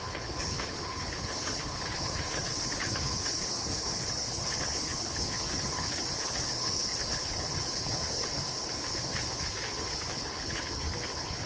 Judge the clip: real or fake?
fake